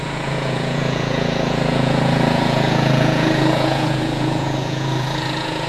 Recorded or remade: remade